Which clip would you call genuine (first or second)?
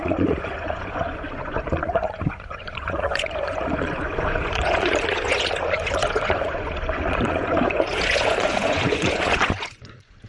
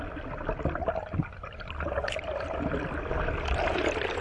second